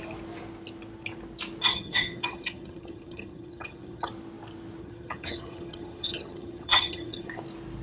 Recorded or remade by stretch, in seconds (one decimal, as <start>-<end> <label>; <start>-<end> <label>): 0.0-1.7 recorded; 1.7-4.1 remade; 4.1-4.8 recorded; 4.8-7.3 remade; 7.3-7.8 recorded